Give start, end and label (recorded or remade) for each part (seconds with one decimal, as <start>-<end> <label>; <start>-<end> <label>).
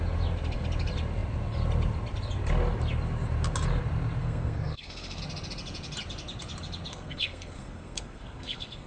0.0-4.2 recorded; 4.2-5.2 remade; 5.2-6.9 recorded; 6.9-8.9 remade